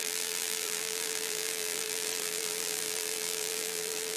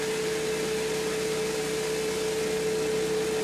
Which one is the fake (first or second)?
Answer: first